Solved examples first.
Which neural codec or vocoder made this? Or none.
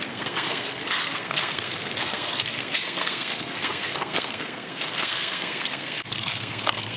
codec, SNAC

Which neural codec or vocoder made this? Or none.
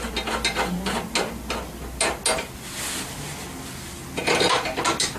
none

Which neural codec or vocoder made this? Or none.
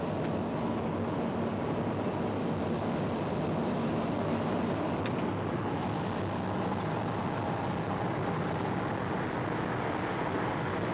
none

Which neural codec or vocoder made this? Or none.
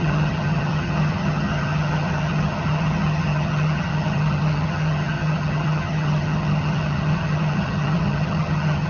vocoder, HiFi-GAN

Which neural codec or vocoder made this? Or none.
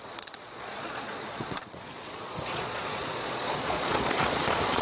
vocoder, Vocos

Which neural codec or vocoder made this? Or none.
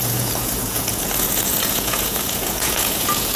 vocoder, Vocos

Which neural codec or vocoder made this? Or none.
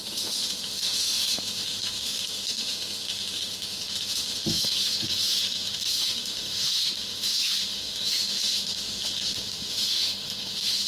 autoencoder, DAC-VAE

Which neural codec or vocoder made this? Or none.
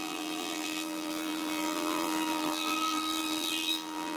vocoder, BigVGAN v2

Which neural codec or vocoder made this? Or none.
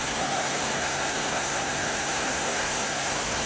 codec, SNAC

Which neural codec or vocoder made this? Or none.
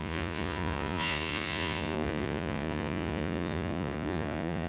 vocoder, Vocos